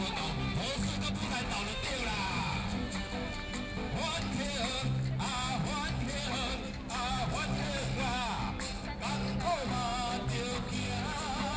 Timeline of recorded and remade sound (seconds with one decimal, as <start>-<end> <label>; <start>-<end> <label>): 0.0-1.8 recorded; 1.8-3.0 remade; 3.0-11.6 recorded